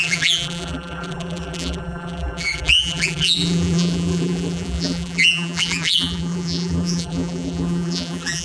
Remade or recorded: remade